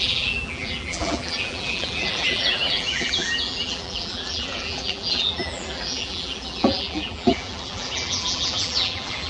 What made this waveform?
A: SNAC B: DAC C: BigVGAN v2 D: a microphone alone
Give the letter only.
C